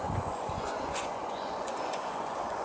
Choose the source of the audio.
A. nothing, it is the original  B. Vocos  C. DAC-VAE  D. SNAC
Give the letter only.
B